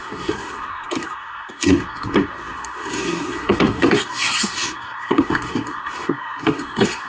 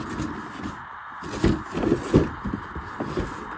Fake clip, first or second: first